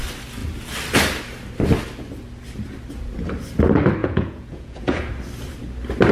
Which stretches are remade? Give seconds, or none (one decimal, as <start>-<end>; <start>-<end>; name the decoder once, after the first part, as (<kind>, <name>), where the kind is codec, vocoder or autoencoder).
4.0-5.1 (vocoder, Vocos)

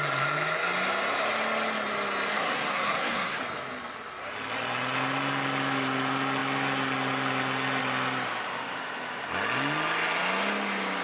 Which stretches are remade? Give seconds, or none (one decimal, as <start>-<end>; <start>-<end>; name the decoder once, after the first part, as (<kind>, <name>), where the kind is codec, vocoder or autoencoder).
2.3-3.4 (codec, SNAC)